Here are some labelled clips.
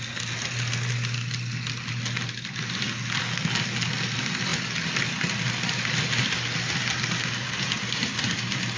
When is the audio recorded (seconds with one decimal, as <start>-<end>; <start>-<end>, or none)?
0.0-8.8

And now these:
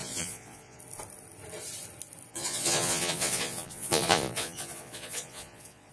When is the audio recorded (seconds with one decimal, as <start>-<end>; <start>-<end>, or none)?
0.8-2.3

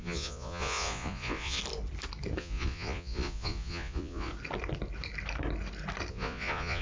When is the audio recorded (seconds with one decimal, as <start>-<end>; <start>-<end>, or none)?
1.6-2.4; 4.3-6.1

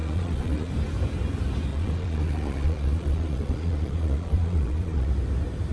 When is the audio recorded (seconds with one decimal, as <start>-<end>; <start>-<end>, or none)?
0.7-1.7; 5.1-5.7

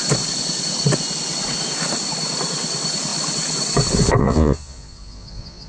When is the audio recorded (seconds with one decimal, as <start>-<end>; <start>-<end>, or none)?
0.0-4.2